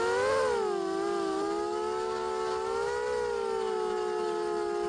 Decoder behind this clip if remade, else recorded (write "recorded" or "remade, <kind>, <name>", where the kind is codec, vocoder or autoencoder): recorded